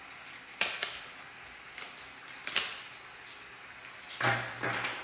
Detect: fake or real real